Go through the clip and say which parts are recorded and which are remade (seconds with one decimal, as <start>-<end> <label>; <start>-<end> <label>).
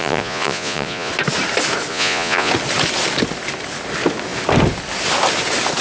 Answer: 0.0-1.1 remade; 1.1-1.9 recorded; 1.9-2.5 remade; 2.5-5.8 recorded